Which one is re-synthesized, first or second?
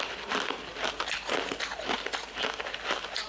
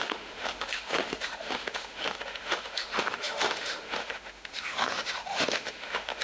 second